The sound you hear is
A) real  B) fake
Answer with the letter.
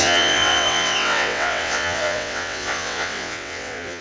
B